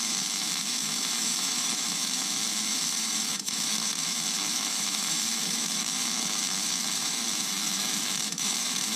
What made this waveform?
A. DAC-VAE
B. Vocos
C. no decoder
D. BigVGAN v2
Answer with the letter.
A